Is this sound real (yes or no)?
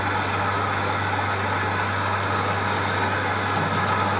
yes